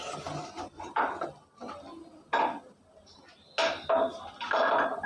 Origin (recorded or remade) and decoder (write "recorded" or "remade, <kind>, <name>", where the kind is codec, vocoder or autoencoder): recorded